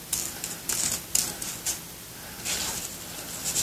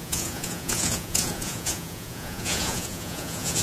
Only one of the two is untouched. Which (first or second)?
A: first